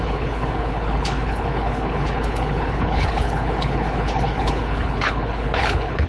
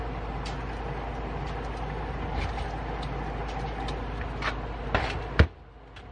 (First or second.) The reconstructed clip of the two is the first